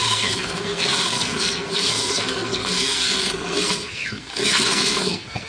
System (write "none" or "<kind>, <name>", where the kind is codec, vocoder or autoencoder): codec, SNAC